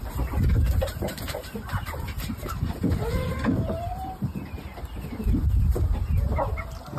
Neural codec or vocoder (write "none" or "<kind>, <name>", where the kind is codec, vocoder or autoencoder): vocoder, BigVGAN v2